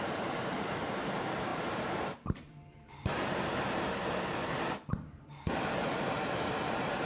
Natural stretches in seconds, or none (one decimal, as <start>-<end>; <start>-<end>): none